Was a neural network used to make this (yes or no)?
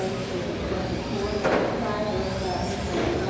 no